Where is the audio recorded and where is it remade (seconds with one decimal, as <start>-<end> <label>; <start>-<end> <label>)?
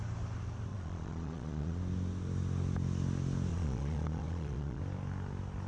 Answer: 0.0-0.7 recorded; 0.7-1.8 remade; 1.8-3.5 recorded; 3.5-4.8 remade; 4.8-5.7 recorded